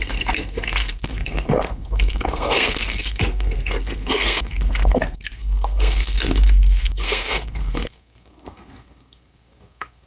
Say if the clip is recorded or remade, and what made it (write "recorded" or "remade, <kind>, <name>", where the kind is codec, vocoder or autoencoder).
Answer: remade, codec, SNAC